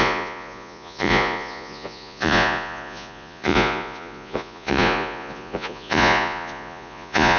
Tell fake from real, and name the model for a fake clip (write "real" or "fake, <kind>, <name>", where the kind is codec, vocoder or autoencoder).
fake, vocoder, Vocos